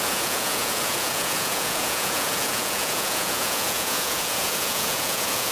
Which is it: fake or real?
fake